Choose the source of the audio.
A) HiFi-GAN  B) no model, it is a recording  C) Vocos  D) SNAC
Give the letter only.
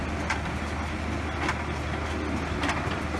B